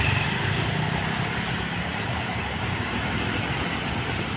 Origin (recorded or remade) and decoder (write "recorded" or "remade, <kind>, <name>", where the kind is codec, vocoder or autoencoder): recorded